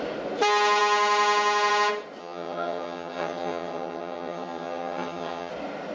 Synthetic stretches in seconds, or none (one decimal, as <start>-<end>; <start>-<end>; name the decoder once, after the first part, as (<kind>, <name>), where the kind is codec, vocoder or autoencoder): 2.2-5.5 (vocoder, HiFi-GAN)